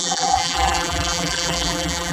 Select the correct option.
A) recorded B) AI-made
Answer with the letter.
B